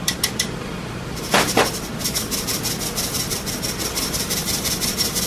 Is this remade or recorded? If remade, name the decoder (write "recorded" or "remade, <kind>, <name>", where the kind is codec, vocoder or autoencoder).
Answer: remade, vocoder, BigVGAN v2